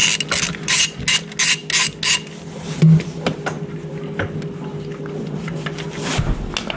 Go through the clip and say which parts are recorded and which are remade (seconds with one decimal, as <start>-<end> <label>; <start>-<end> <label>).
0.0-6.8 recorded